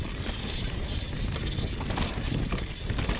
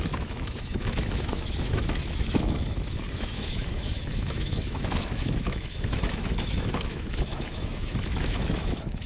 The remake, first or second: second